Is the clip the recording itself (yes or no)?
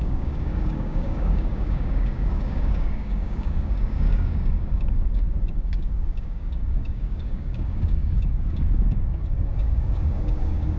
no